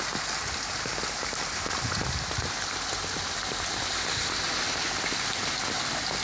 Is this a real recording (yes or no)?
yes